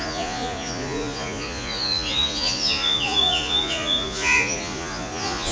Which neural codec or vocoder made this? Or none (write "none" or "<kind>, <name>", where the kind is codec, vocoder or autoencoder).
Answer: vocoder, Vocos